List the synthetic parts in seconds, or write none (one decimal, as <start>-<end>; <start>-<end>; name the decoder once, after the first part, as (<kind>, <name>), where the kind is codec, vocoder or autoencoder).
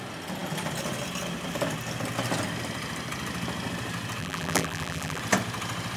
4.2-5.2 (vocoder, BigVGAN v2)